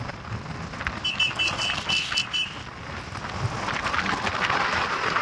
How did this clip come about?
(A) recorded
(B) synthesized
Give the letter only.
A